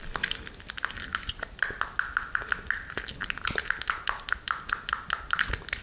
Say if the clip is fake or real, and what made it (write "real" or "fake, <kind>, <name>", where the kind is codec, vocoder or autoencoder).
real